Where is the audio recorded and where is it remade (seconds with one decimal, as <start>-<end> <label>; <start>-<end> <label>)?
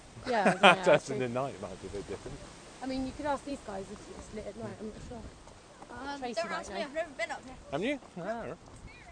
0.0-4.7 recorded; 4.7-5.8 remade; 5.8-9.1 recorded